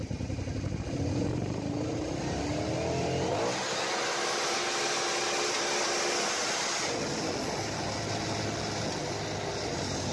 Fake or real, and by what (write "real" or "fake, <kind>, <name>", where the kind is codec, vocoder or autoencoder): real